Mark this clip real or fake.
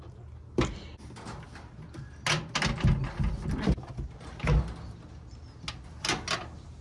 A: real